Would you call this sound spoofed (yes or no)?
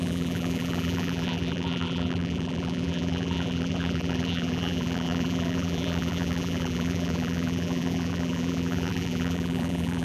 yes